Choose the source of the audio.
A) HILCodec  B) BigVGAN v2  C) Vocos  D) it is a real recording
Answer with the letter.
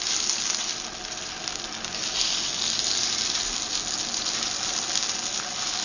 D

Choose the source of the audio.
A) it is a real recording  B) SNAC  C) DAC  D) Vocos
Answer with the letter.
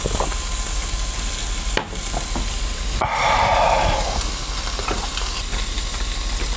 A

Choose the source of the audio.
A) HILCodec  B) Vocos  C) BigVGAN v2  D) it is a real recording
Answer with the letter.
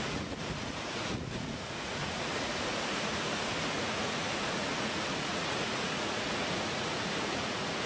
B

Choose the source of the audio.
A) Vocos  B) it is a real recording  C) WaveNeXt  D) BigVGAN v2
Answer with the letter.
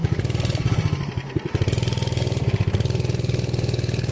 B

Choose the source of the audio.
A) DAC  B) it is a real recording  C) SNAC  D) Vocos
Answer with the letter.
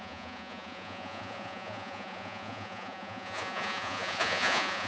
D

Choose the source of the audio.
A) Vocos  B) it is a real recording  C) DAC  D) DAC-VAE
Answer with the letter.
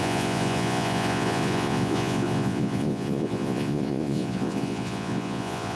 A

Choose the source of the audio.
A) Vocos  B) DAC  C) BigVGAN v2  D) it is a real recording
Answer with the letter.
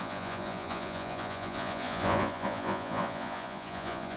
A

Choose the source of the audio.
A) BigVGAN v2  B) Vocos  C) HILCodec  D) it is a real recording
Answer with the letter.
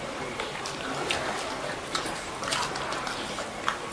D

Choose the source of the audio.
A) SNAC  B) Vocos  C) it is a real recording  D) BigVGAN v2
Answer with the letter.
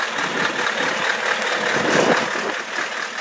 C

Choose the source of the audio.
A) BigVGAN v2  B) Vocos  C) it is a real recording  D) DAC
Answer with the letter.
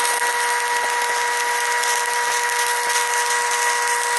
C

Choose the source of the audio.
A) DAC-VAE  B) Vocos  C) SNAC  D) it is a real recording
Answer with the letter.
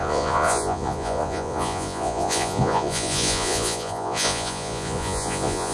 B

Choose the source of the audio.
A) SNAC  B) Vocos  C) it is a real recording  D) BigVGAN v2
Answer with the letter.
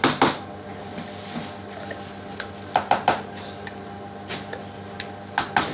C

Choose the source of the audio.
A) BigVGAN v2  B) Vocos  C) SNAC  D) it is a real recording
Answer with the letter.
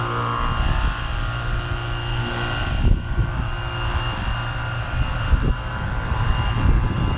D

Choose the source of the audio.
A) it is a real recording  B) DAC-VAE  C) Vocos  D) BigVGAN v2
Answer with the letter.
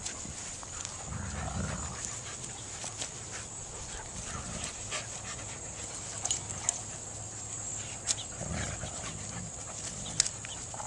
A